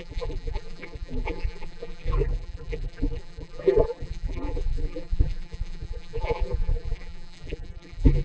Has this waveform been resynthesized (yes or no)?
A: yes